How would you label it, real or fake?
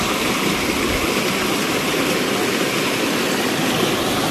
real